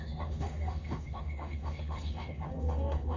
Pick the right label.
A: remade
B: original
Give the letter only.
A